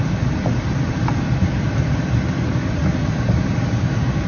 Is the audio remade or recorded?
recorded